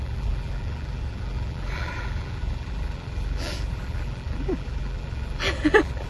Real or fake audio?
fake